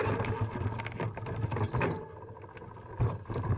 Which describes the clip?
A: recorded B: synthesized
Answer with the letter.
A